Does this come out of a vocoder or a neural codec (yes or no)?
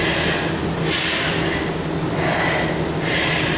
no